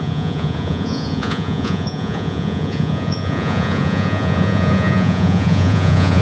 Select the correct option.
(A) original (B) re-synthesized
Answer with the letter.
B